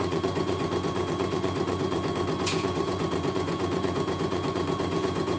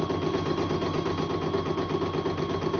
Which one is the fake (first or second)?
first